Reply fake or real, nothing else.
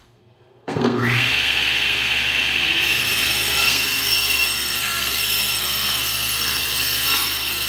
fake